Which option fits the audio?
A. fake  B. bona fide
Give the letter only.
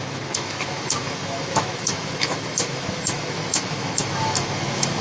A